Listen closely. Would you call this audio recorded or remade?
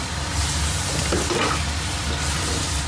recorded